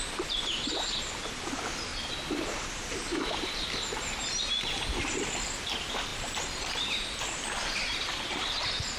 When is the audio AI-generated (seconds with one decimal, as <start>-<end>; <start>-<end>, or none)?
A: 0.0-1.9; 5.4-6.1; 6.7-9.0